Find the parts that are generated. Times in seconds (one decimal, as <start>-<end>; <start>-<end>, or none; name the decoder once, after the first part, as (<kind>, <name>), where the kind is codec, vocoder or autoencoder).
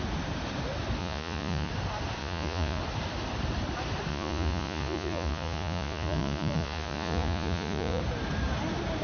1.0-1.7 (vocoder, Vocos); 2.2-2.8; 4.1-8.0